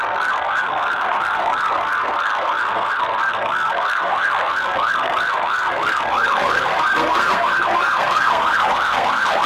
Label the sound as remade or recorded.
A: remade